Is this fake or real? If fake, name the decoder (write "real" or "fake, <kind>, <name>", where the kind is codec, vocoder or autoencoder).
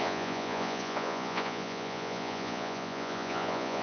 fake, vocoder, Vocos